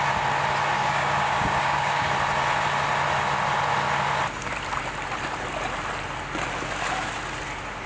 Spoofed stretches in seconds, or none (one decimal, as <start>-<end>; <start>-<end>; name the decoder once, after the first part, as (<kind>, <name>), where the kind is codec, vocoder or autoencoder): 0.7-2.1 (codec, DAC)

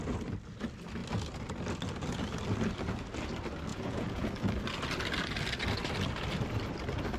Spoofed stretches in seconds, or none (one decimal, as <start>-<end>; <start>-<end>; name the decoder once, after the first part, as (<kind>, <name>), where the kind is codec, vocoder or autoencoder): 3.7-4.3 (vocoder, Vocos)